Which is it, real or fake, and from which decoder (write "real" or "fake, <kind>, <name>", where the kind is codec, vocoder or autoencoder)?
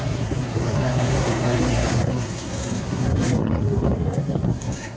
fake, codec, SNAC